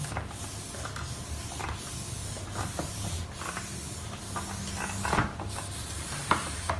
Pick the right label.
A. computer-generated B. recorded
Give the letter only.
B